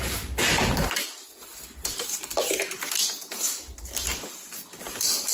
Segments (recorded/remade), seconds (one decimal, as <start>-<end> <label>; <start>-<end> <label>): 0.0-0.6 recorded; 0.6-2.8 remade; 2.8-4.1 recorded; 4.1-5.3 remade